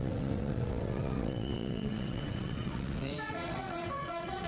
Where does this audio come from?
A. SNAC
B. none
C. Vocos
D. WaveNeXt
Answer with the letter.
D